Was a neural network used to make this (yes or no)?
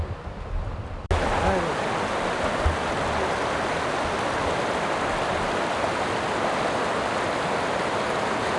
no